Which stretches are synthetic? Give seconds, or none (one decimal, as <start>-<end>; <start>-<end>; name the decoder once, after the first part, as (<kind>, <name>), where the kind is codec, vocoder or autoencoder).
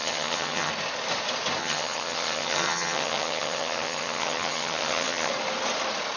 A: 0.0-0.7 (vocoder, HiFi-GAN); 1.6-5.3